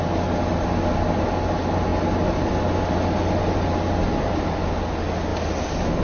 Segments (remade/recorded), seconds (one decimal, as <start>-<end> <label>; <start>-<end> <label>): 0.0-6.0 recorded